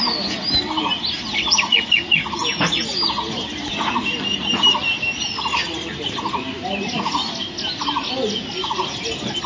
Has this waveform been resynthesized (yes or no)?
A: no